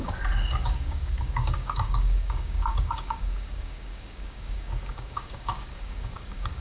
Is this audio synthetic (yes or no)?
yes